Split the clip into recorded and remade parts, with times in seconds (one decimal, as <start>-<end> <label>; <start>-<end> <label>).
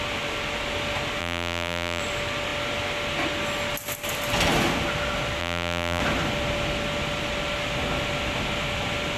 0.0-1.2 recorded; 1.2-2.0 remade; 2.0-5.4 recorded; 5.4-6.0 remade; 6.0-9.2 recorded